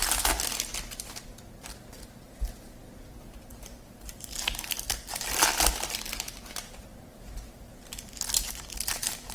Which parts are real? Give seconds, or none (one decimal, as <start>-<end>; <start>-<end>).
0.0-3.5; 4.7-6.9; 7.5-9.3